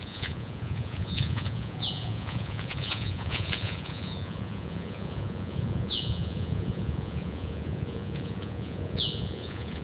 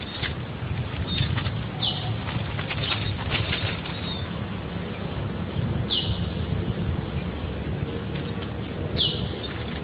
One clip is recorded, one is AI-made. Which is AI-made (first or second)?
first